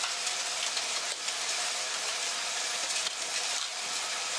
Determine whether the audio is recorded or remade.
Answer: recorded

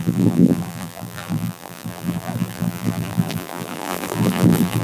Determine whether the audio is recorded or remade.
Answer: remade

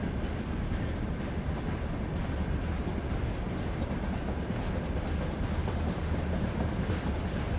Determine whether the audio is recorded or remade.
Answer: recorded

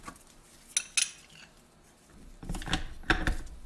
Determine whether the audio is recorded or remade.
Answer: recorded